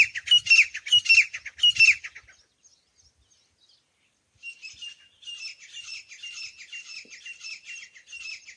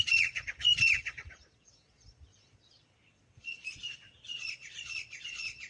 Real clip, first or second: first